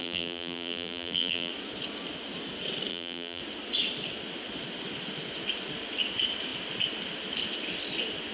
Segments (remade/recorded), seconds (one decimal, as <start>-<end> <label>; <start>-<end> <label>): 0.0-1.5 remade; 1.5-2.9 recorded; 2.9-3.4 remade; 3.4-8.3 recorded